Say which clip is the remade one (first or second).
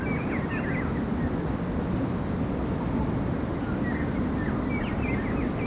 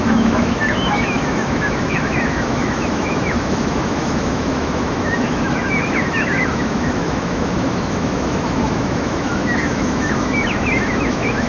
second